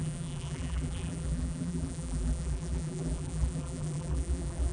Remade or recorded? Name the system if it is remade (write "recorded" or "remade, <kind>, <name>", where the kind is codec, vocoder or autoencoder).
remade, vocoder, BigVGAN v2